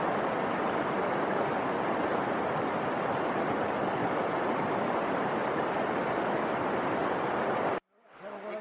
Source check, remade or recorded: recorded